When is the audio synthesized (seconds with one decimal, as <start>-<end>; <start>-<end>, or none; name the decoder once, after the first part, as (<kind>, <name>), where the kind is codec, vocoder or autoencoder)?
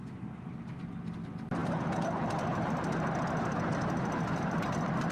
none